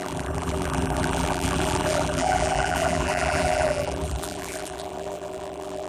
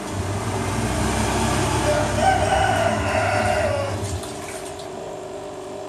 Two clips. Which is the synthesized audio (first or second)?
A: first